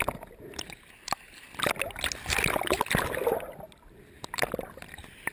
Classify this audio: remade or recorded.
recorded